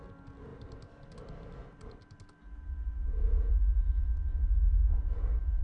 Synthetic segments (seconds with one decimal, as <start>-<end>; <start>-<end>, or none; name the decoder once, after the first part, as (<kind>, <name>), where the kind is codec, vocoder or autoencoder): none